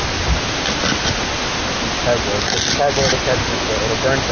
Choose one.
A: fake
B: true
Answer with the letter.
B